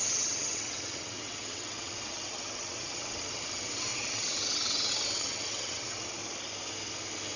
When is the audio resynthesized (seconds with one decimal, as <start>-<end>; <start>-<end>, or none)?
0.0-6.2